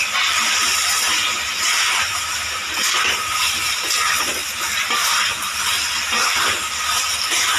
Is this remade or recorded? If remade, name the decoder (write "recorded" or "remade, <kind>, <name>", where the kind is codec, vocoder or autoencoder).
remade, vocoder, BigVGAN v2